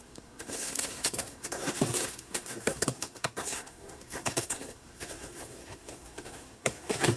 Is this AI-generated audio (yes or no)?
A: yes